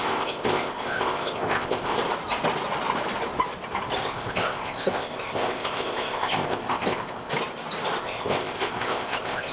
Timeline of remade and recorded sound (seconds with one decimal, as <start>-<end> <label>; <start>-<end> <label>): 0.0-2.0 remade; 2.0-4.0 recorded; 4.0-7.3 remade; 7.3-8.0 recorded; 8.0-9.5 remade